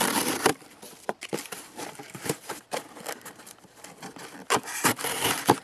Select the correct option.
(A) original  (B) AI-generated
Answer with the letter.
B